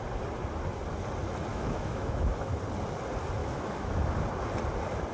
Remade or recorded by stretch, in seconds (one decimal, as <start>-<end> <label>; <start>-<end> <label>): 0.0-1.5 recorded; 1.5-2.6 remade; 2.6-3.4 recorded; 3.4-4.1 remade; 4.1-5.1 recorded